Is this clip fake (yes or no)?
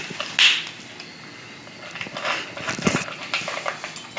no